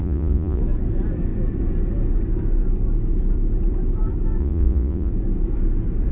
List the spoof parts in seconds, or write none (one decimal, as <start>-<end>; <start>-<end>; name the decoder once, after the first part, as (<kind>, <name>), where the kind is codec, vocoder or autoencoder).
0.0-0.6 (vocoder, Vocos); 4.4-5.1